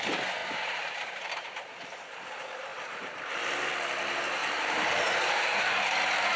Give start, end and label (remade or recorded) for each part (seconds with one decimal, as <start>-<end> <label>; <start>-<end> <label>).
0.0-0.4 recorded; 0.4-1.4 remade; 1.4-2.7 recorded; 2.7-3.4 remade; 3.4-4.4 recorded; 4.4-5.8 remade; 5.8-6.4 recorded